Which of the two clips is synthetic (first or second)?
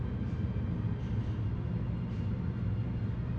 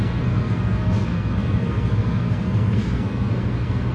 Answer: second